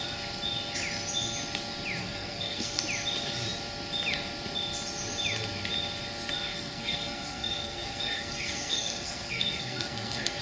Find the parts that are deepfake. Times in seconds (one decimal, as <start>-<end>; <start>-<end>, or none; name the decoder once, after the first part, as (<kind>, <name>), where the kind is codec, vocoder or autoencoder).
2.0-2.8 (codec, SNAC); 6.5-10.4